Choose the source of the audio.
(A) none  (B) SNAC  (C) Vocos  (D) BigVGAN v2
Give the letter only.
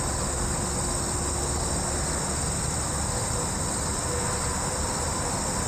A